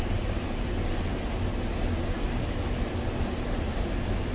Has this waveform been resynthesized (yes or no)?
no